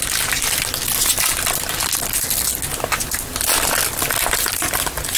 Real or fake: real